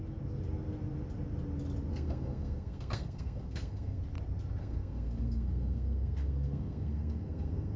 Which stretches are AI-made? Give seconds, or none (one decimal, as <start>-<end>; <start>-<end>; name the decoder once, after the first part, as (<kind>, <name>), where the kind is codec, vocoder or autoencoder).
1.9-4.0 (codec, SNAC); 4.6-7.8